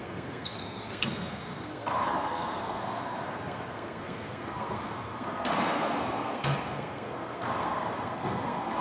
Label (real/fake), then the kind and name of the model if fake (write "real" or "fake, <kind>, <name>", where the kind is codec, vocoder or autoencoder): fake, codec, SNAC